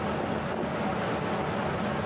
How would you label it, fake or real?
real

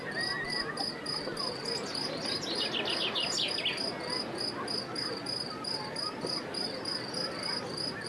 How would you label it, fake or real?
real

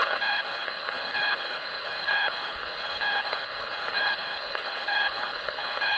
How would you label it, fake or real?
fake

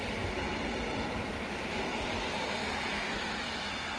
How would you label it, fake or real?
real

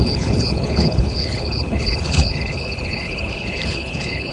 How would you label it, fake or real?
fake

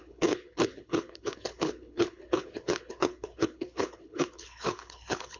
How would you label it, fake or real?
fake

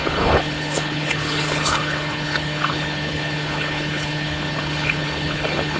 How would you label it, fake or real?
fake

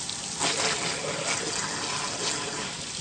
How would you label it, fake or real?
real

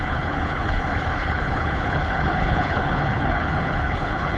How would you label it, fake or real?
fake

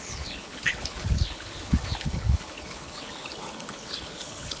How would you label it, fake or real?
fake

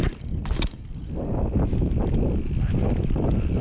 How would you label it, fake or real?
real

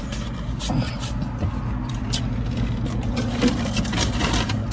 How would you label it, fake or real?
real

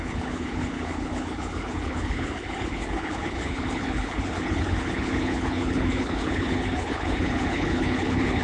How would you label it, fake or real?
fake